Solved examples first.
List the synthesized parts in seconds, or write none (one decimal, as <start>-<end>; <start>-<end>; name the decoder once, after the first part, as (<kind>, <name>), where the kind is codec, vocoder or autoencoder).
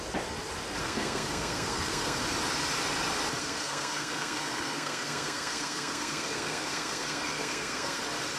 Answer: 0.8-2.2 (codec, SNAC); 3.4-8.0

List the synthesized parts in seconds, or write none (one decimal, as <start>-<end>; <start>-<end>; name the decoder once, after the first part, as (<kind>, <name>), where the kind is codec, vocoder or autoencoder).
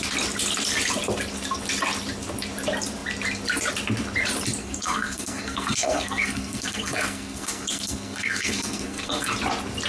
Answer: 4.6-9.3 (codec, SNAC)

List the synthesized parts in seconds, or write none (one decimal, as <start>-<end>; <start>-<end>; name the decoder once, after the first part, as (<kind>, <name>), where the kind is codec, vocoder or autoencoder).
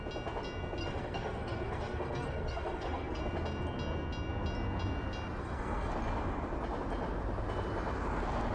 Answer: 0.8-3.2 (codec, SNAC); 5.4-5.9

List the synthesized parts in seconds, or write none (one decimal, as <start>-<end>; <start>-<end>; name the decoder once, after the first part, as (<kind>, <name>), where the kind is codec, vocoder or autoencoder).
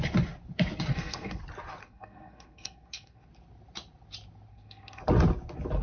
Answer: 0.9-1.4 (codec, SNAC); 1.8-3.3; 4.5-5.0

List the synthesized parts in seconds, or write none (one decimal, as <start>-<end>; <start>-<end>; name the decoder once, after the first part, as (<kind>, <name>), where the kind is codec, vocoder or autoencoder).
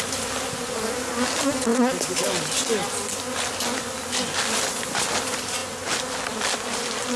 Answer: none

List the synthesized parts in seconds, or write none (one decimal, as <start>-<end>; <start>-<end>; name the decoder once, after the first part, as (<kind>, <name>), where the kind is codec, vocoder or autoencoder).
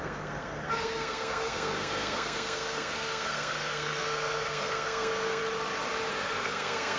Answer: 0.0-5.4 (codec, SNAC); 6.1-7.0